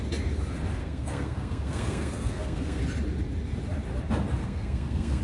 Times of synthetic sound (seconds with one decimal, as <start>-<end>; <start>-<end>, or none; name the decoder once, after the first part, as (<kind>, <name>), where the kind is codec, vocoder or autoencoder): 0.8-2.8 (codec, SNAC); 4.4-5.2